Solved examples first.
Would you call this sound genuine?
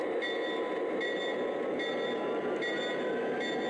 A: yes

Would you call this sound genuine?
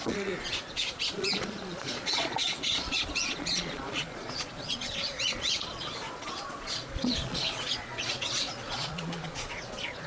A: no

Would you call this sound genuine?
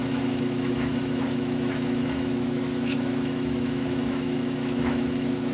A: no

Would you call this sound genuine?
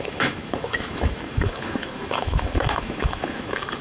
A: no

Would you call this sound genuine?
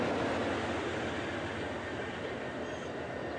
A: yes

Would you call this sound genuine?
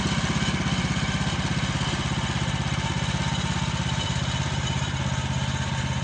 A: yes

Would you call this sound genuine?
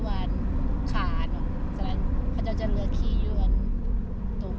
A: yes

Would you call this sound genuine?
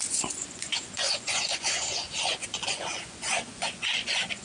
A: no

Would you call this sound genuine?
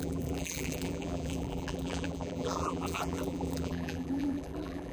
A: no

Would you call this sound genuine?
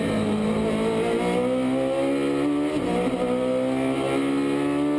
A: yes